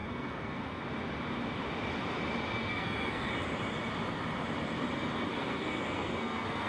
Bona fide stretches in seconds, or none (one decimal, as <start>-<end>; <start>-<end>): 0.8-2.7; 3.3-5.4